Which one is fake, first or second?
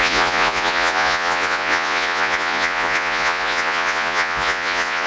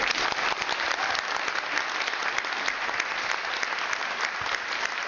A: first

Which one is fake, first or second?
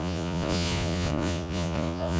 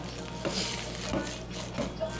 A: first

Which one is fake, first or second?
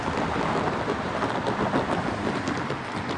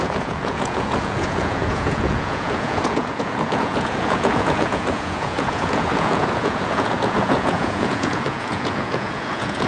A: second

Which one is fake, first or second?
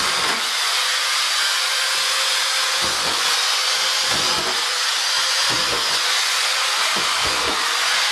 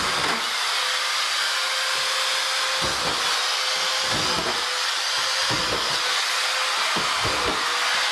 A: first